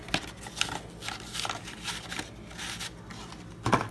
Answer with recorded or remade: recorded